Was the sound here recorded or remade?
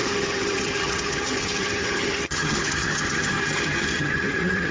remade